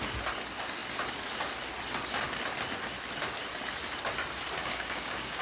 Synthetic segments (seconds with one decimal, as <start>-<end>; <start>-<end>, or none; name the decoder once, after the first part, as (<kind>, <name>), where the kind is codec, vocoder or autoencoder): 4.6-5.4 (codec, DAC)